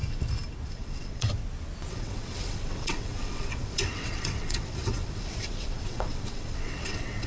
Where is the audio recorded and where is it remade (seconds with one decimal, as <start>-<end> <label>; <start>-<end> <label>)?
0.0-0.7 recorded; 0.7-1.4 remade; 1.4-1.9 recorded; 1.9-7.3 remade